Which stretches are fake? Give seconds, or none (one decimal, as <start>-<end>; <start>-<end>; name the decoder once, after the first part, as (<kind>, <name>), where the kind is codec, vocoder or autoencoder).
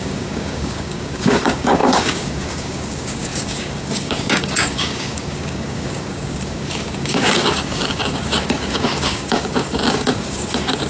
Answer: 0.0-10.9 (codec, DAC)